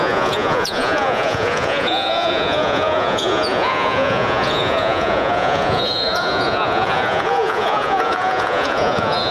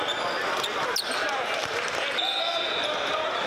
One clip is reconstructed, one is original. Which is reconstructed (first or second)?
first